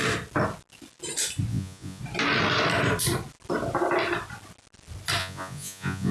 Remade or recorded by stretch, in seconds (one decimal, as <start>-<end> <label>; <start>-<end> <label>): 0.0-1.5 recorded; 1.5-2.0 remade; 2.0-5.2 recorded; 5.2-6.1 remade

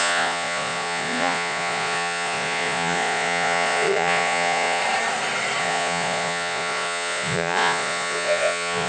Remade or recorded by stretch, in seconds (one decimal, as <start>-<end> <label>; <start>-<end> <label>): 0.0-4.8 remade; 4.8-5.6 recorded; 5.6-8.9 remade

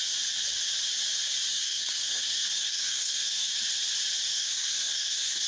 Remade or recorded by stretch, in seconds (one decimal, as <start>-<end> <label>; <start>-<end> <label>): 0.0-1.5 recorded; 1.5-3.5 remade; 3.5-4.3 recorded; 4.3-5.5 remade

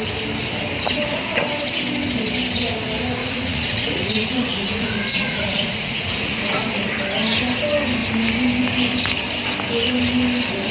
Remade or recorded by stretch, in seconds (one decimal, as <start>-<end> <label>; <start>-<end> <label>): 0.0-3.2 recorded; 3.2-6.7 remade; 6.7-10.7 recorded

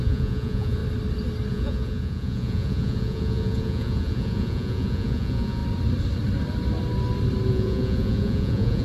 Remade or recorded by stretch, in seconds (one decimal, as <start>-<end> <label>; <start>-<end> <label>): 0.0-0.8 remade; 0.8-1.5 recorded; 1.5-5.6 remade; 5.6-7.5 recorded; 7.5-8.8 remade

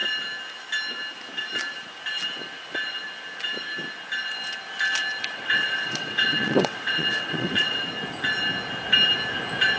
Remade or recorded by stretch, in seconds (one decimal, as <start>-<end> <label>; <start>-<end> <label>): 0.0-5.3 recorded; 5.3-7.9 remade; 7.9-9.8 recorded

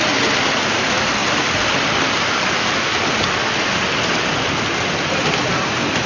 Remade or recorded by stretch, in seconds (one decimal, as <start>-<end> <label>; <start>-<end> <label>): 0.0-1.2 recorded; 1.2-4.9 remade; 4.9-6.1 recorded

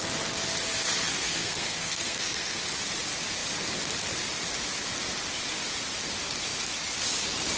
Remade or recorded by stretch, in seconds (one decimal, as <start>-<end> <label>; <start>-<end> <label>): 0.0-1.1 recorded; 1.1-2.6 remade; 2.6-7.6 recorded